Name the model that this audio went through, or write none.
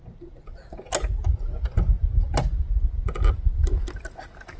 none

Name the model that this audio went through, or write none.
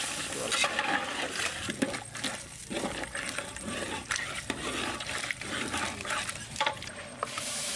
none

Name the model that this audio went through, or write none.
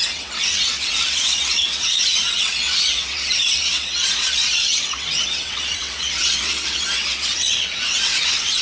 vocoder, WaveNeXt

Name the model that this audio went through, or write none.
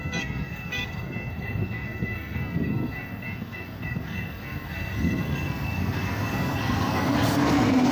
codec, SNAC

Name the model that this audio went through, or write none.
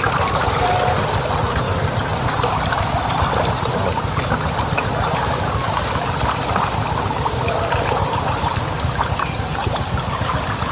none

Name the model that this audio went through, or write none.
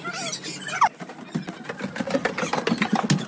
none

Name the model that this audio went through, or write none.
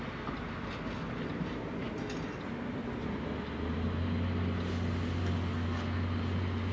none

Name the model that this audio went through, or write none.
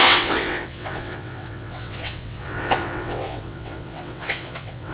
vocoder, WaveNeXt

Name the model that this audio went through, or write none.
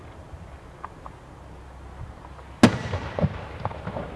none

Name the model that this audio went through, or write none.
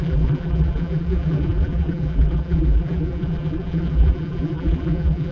vocoder, BigVGAN v2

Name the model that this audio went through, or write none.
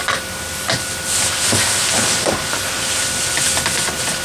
none